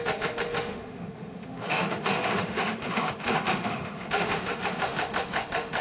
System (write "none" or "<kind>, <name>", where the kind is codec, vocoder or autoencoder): autoencoder, DAC-VAE